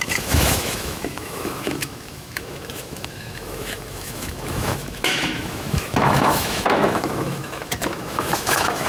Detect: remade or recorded remade